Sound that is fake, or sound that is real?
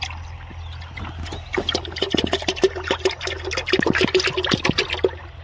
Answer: real